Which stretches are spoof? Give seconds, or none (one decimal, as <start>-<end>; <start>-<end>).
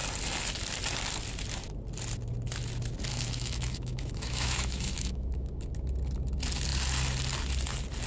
3.1-5.5